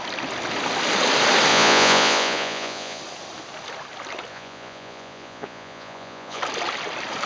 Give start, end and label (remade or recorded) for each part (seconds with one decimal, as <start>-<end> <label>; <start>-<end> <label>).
0.0-1.5 recorded; 1.5-3.0 remade; 3.0-4.3 recorded; 4.3-6.4 remade; 6.4-7.3 recorded